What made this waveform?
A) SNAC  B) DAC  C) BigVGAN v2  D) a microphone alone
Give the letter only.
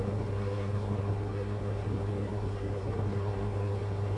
A